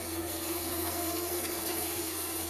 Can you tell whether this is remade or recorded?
remade